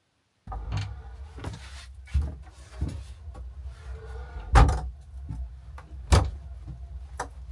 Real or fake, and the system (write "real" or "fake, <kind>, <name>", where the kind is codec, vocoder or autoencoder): real